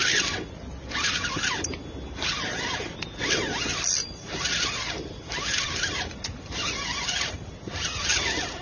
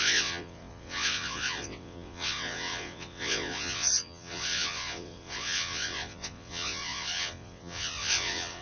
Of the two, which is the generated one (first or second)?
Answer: second